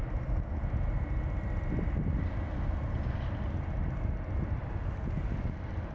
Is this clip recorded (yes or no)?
yes